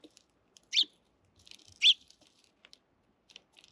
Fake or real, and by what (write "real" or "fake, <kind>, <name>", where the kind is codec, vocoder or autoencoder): real